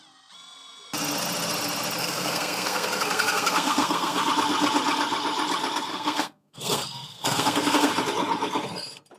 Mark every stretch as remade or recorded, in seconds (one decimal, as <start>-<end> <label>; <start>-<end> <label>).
0.0-2.0 recorded; 2.0-4.3 remade; 4.3-5.9 recorded; 5.9-7.9 remade; 7.9-9.2 recorded